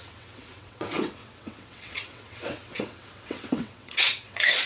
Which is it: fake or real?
fake